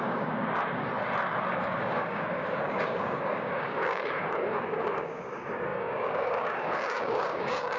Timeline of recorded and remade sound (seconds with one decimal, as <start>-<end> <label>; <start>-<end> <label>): 0.0-0.9 remade; 0.9-1.5 recorded; 1.5-7.8 remade